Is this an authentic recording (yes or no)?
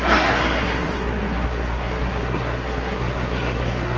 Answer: no